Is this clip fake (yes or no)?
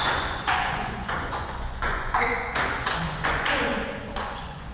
yes